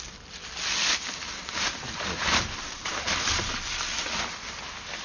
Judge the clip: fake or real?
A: real